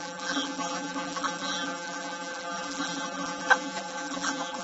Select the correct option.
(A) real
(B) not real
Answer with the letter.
B